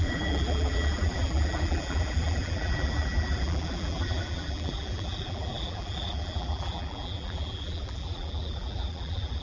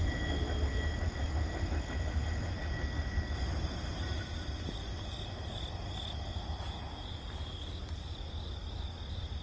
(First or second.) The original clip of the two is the second